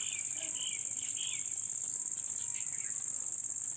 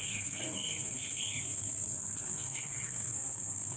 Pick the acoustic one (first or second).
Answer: first